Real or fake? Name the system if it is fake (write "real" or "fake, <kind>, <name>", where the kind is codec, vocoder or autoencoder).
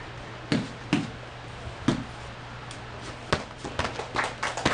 real